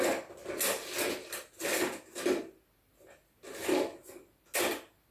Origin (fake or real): real